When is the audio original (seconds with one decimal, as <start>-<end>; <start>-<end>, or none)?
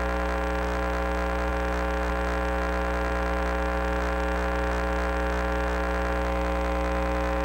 0.0-7.4